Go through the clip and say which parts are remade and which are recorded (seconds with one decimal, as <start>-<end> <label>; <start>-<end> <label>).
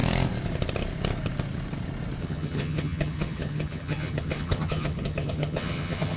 0.0-2.2 recorded; 2.2-6.2 remade